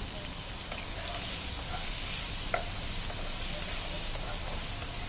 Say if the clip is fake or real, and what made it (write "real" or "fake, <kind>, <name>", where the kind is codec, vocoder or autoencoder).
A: real